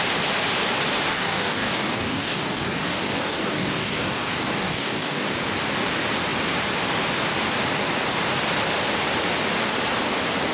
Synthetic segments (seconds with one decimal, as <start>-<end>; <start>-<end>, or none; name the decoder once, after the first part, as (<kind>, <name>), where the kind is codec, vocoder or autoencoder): 1.1-5.3 (codec, DAC)

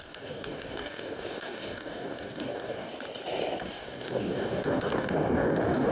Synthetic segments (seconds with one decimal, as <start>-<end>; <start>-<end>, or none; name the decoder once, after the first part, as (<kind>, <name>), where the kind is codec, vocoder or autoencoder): 0.0-2.9 (codec, DAC); 3.6-5.9

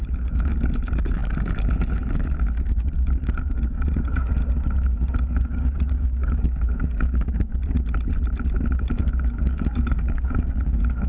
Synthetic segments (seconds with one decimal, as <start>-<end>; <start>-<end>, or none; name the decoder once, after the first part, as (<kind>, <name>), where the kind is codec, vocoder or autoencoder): 0.0-4.4 (codec, DAC); 5.2-7.5; 8.8-11.1

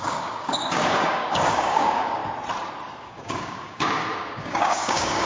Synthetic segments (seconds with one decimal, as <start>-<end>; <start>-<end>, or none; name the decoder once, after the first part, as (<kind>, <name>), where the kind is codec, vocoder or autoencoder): 0.0-2.2 (codec, DAC); 3.0-5.3